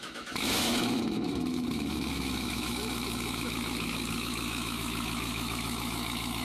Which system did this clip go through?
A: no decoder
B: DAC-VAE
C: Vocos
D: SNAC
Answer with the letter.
B